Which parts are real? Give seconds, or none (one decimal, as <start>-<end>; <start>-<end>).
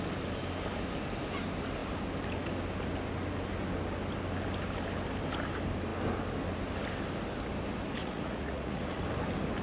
0.0-8.0; 9.0-9.6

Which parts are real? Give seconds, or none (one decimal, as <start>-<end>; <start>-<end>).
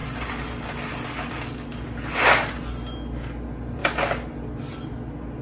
0.0-5.4